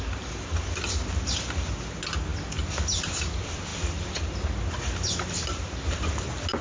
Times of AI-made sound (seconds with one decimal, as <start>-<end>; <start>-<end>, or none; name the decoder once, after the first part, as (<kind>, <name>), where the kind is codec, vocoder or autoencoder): none